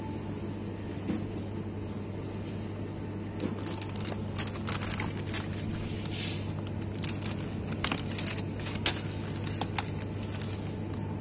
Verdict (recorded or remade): recorded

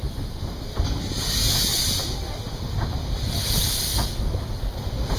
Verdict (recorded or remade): recorded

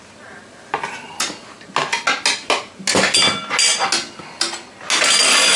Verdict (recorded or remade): recorded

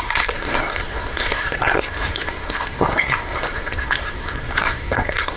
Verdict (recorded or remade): remade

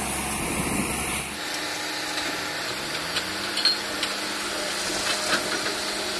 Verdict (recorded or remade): recorded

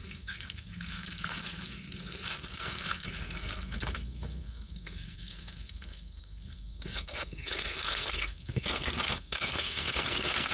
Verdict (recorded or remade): remade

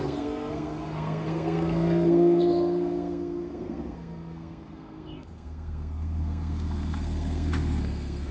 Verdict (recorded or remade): remade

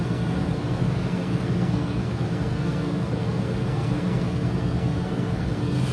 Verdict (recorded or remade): remade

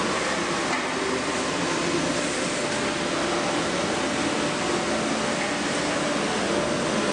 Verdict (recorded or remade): recorded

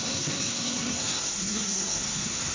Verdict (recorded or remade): remade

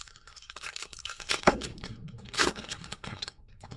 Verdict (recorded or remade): remade